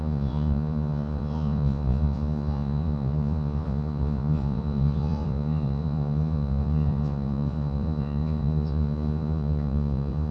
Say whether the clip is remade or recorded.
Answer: remade